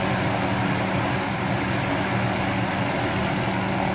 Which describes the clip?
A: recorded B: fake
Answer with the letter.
A